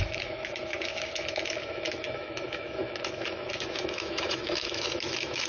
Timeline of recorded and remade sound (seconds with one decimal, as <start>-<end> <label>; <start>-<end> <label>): 0.0-5.5 remade